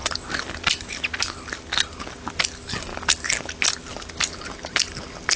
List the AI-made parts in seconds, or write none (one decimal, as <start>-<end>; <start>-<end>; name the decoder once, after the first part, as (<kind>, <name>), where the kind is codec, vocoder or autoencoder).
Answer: none